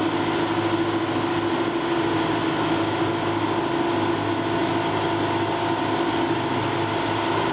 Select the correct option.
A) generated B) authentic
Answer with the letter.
B